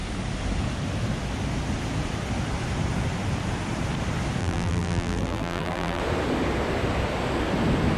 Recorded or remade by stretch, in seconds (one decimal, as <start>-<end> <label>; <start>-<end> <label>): 0.0-4.4 recorded; 4.4-6.0 remade; 6.0-8.0 recorded